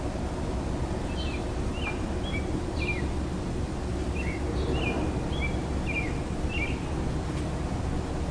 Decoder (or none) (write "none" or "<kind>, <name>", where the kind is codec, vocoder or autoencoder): none